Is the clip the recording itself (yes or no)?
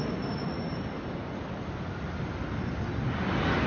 yes